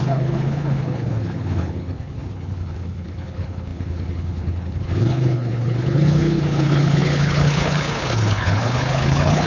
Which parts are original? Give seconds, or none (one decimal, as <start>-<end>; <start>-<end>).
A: none